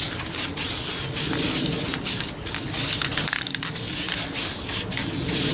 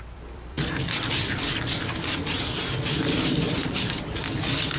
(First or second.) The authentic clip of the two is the first